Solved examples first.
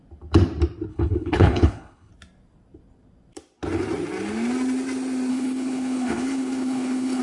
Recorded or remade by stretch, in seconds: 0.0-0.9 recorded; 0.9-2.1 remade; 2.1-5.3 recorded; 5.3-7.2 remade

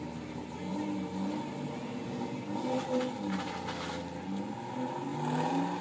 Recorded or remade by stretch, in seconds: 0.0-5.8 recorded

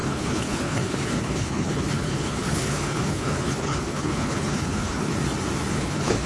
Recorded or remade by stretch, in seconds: 0.0-5.1 remade; 5.1-5.7 recorded; 5.7-6.3 remade